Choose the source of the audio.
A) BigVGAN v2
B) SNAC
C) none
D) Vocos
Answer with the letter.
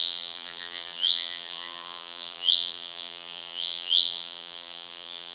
A